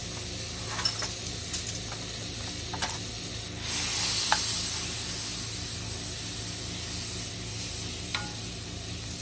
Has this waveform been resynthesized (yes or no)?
no